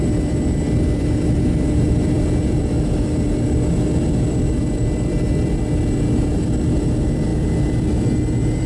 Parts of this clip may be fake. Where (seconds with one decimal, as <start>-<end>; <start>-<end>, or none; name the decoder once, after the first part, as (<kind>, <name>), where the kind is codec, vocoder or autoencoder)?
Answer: 0.0-8.7 (vocoder, BigVGAN v2)